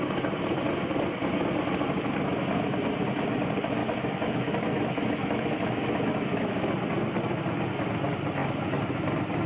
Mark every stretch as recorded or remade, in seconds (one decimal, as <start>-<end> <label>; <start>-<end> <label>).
0.0-3.8 recorded; 3.8-6.5 remade; 6.5-9.5 recorded